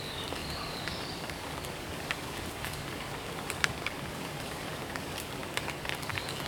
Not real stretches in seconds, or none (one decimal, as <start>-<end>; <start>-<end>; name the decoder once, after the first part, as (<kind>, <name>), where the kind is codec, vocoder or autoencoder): 0.0-6.5 (codec, DAC)